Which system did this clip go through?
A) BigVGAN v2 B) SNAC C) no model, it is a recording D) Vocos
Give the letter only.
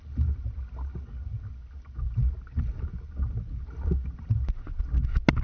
C